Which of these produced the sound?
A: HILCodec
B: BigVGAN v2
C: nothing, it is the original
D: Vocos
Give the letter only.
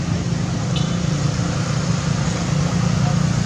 C